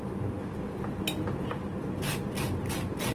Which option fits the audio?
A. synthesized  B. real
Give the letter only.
B